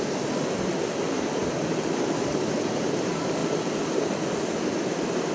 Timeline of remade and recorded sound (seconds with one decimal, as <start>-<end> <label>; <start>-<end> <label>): 0.0-5.3 recorded